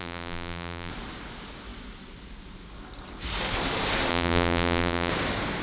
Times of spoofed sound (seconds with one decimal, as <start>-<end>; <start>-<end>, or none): 0.0-0.9; 4.1-5.1

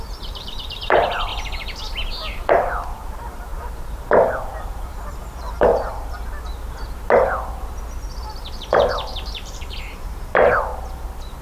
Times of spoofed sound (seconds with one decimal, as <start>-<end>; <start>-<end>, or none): 0.0-1.3; 2.5-5.7; 8.5-10.7

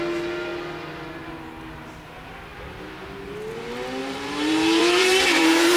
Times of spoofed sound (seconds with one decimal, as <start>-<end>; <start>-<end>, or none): 4.0-5.8

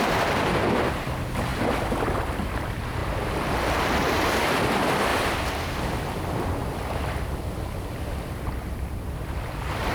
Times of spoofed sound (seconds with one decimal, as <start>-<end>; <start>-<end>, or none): 0.0-3.0; 3.8-5.1; 6.7-9.9

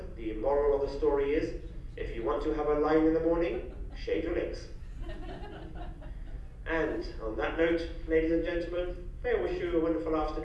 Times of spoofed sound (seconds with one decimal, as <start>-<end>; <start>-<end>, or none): 8.4-8.9